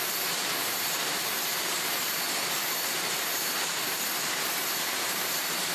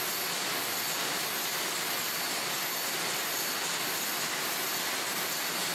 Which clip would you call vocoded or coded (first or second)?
first